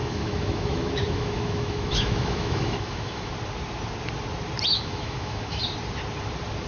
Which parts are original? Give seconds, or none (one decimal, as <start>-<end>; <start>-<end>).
3.3-4.7; 5.6-6.7